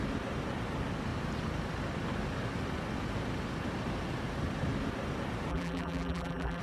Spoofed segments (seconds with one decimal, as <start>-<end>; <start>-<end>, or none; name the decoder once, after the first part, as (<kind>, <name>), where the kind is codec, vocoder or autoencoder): 5.5-6.6 (vocoder, BigVGAN v2)